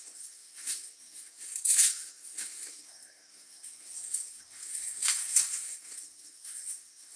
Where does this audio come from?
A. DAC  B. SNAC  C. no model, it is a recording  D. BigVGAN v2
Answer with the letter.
B